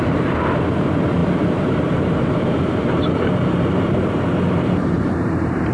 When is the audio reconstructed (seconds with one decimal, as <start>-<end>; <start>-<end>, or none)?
0.0-5.7